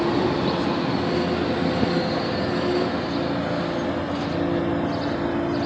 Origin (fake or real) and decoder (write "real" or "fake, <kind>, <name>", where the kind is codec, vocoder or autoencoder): real